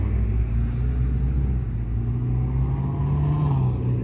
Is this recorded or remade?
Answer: recorded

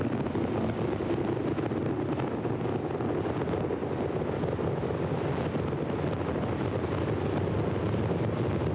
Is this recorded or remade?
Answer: recorded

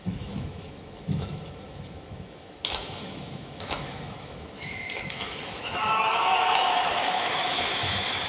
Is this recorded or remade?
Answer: remade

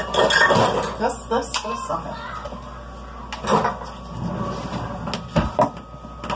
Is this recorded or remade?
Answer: recorded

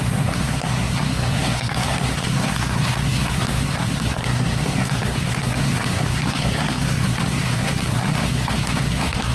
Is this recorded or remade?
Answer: remade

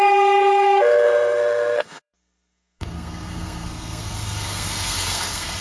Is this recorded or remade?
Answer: remade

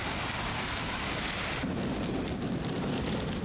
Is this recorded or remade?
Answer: recorded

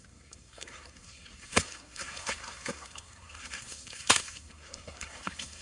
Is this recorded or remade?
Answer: remade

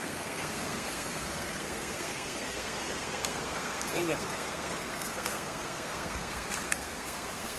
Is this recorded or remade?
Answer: remade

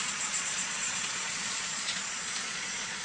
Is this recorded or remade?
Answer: remade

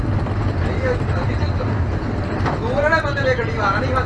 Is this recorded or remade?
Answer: recorded